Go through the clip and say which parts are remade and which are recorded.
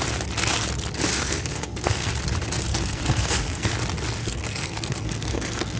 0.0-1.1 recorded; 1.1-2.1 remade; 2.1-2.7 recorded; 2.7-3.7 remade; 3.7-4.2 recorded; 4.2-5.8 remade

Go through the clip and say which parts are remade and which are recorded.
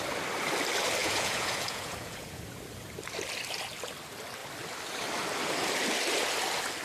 0.0-1.0 recorded; 1.0-2.4 remade; 2.4-6.8 recorded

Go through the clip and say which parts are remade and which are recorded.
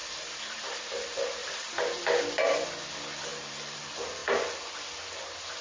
0.0-0.6 remade; 0.6-1.4 recorded; 1.4-2.0 remade; 2.0-3.3 recorded; 3.3-3.8 remade; 3.8-5.6 recorded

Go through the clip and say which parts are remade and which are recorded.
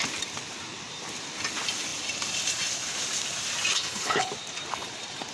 0.0-3.7 recorded; 3.7-4.3 remade; 4.3-5.3 recorded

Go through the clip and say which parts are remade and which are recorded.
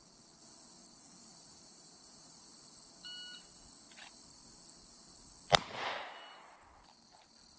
0.0-1.3 recorded; 1.3-2.5 remade; 2.5-7.6 recorded